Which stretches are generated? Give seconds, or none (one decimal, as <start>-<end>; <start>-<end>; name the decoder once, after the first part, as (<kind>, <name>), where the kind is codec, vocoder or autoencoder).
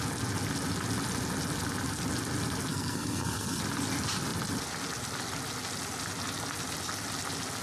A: 2.7-3.6 (codec, SNAC)